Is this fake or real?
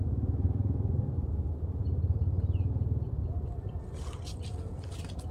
real